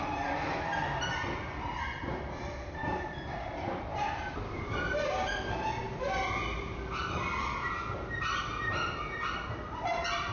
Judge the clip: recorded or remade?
recorded